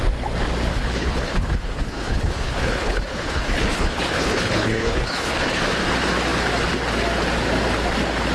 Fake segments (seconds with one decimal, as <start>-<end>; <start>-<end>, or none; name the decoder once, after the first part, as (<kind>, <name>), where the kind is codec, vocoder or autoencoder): 0.7-5.6 (codec, HILCodec)